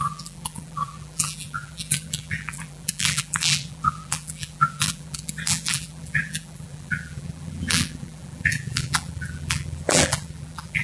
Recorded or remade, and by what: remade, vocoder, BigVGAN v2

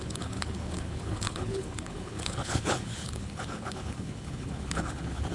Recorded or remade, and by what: remade, codec, HILCodec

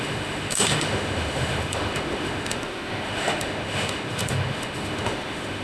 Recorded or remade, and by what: remade, autoencoder, DAC-VAE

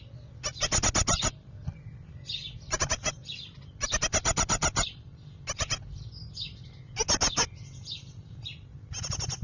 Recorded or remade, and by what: recorded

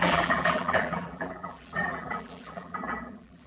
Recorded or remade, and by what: remade, vocoder, BigVGAN v2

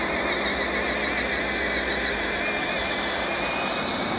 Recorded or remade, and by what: recorded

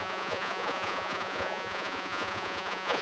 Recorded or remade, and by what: remade, vocoder, Vocos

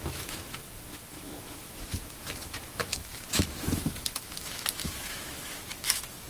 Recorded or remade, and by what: remade, autoencoder, DAC-VAE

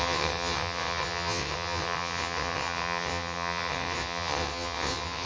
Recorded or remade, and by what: remade, vocoder, WaveNeXt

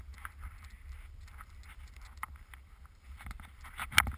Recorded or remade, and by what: recorded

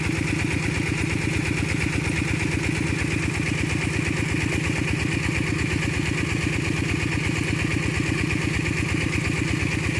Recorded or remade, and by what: recorded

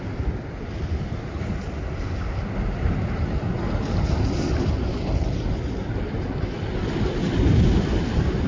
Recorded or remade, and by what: recorded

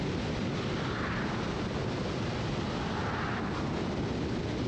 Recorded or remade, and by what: recorded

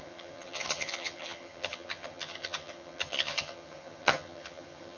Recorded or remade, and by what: remade, vocoder, HiFi-GAN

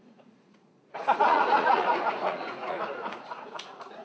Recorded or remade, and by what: remade, vocoder, Vocos